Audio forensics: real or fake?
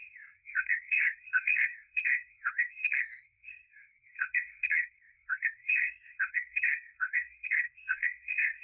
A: fake